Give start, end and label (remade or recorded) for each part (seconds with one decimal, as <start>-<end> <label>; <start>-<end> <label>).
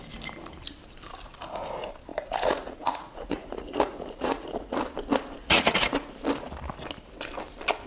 0.0-2.1 recorded; 2.1-4.8 remade; 4.8-5.4 recorded; 5.4-6.1 remade; 6.1-7.9 recorded